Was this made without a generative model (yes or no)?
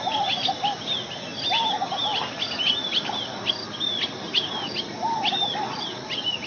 yes